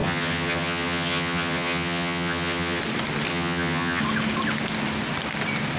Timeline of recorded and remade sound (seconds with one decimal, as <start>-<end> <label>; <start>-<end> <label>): 0.0-2.8 remade; 2.8-3.3 recorded; 3.3-4.0 remade; 4.0-5.8 recorded